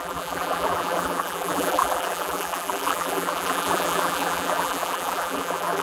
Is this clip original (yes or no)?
no